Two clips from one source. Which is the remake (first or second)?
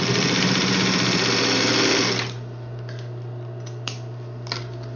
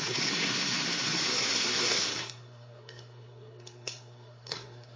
second